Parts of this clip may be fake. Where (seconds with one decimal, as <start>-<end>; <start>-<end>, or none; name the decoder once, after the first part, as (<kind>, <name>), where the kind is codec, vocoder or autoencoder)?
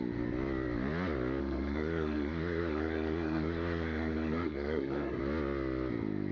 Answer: 1.4-5.2 (codec, SNAC)